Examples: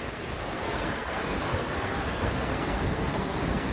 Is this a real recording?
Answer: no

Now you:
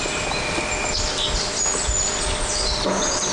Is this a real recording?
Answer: yes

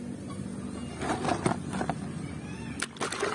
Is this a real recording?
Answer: yes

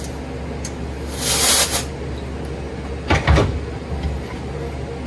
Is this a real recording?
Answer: yes